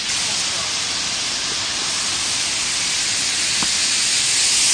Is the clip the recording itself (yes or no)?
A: yes